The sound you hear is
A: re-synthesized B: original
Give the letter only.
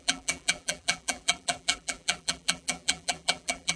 A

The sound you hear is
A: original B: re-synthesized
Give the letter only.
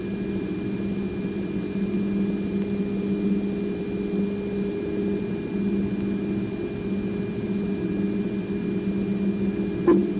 A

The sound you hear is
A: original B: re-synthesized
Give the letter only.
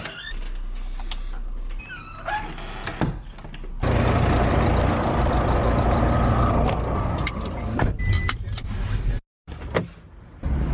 A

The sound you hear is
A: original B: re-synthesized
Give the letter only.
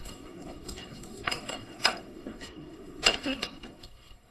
B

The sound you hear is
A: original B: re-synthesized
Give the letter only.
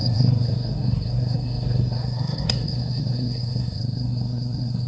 B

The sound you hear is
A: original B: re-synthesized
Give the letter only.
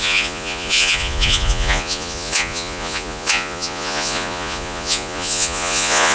B